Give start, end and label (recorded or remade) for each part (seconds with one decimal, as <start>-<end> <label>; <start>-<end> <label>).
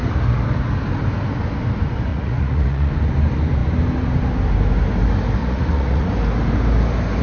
0.0-2.1 recorded; 2.1-2.9 remade; 2.9-5.4 recorded; 5.4-6.1 remade; 6.1-7.2 recorded